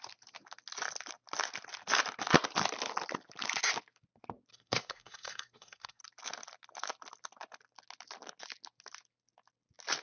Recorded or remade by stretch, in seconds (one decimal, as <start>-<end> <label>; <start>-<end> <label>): 0.0-4.5 recorded; 4.5-6.0 remade; 6.0-10.0 recorded